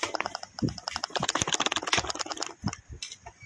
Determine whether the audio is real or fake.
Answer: real